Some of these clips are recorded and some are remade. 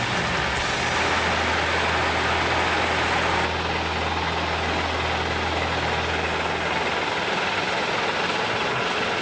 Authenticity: recorded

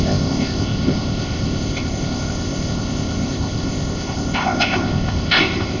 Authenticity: remade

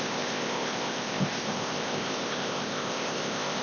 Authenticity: remade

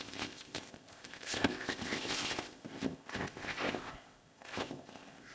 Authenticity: remade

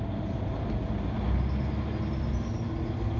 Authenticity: recorded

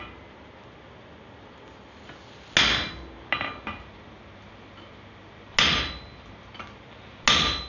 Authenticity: recorded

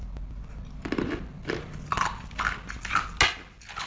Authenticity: recorded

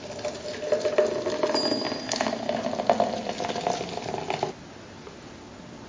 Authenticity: recorded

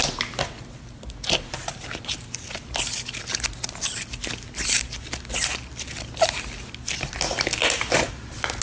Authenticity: recorded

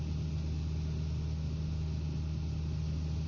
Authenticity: recorded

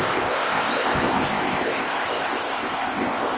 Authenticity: remade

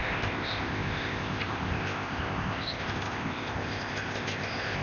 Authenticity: remade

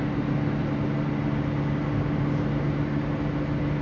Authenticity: recorded